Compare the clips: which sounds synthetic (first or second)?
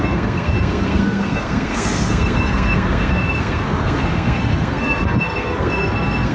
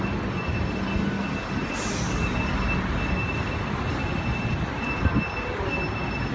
first